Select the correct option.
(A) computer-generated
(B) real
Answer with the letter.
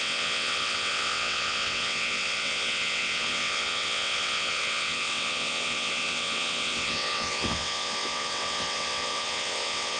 A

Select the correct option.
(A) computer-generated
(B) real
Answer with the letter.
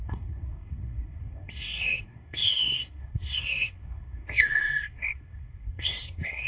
A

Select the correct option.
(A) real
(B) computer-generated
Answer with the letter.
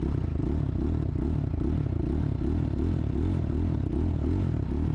A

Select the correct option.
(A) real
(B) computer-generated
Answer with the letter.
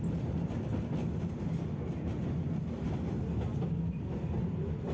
A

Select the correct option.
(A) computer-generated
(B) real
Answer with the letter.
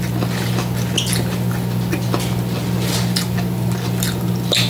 B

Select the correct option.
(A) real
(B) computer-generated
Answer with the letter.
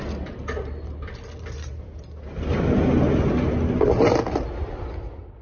A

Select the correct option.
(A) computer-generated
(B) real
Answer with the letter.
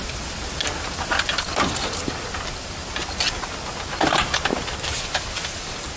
B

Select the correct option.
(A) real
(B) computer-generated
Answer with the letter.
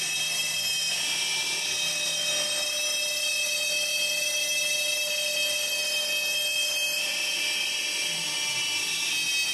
A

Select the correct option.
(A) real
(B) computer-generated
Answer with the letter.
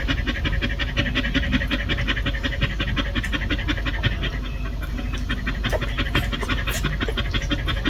A